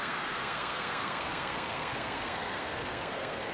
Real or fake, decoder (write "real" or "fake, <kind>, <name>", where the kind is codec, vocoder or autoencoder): fake, codec, SNAC